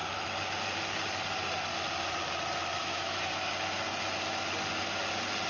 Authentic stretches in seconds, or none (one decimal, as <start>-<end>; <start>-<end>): 0.0-2.8; 3.5-5.5